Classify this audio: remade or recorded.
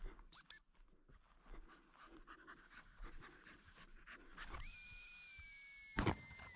recorded